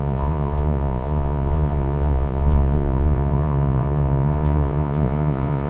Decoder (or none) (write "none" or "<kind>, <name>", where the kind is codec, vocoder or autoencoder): vocoder, Vocos